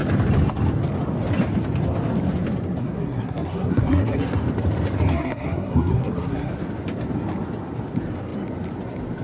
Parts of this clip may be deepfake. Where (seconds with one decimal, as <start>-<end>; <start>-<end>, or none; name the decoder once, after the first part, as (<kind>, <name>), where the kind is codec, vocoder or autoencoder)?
2.8-4.4 (codec, SNAC); 5.1-6.5